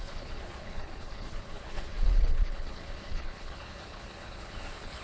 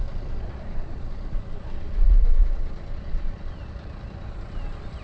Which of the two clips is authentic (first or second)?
second